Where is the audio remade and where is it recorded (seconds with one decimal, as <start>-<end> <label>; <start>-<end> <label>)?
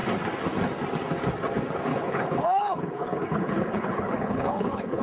0.0-1.9 recorded; 1.9-5.0 remade